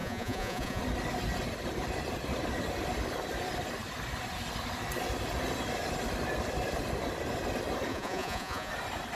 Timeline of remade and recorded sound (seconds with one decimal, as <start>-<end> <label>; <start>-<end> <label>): 0.0-0.8 remade; 0.8-7.9 recorded; 7.9-8.7 remade; 8.7-9.2 recorded